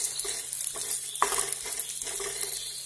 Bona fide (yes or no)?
yes